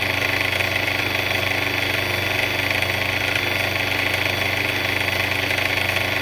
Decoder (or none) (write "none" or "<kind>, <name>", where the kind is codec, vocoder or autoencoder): none